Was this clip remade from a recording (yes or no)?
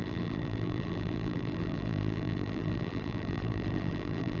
yes